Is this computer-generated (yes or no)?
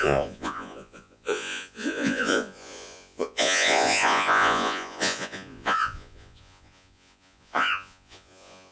yes